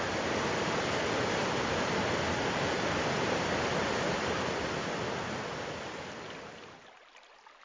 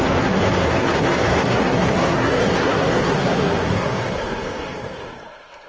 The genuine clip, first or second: first